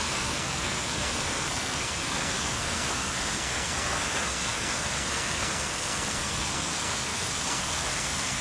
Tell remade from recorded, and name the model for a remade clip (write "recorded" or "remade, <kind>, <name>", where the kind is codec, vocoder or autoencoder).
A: remade, codec, SNAC